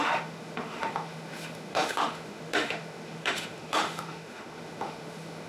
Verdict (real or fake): fake